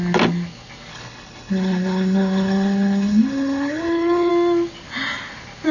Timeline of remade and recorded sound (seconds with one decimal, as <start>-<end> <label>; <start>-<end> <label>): 0.0-0.9 recorded; 0.9-4.3 remade; 4.3-5.7 recorded